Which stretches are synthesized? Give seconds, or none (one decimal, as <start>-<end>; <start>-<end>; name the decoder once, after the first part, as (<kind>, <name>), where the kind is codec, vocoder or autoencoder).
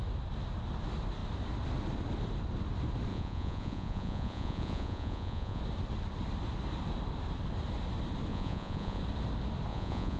3.1-5.6 (vocoder, Vocos); 8.3-9.0; 9.7-10.2